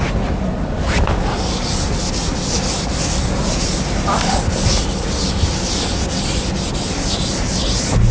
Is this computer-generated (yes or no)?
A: no